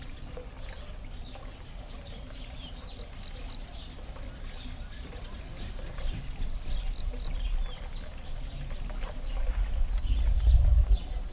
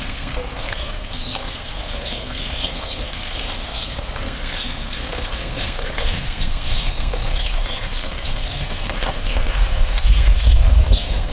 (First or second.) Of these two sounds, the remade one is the second